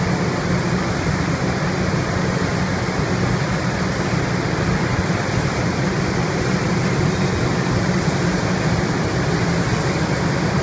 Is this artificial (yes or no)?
no